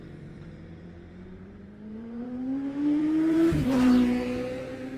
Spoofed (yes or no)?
yes